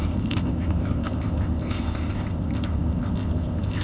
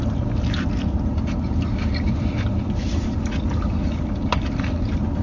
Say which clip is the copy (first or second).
first